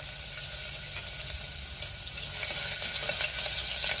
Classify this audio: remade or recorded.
recorded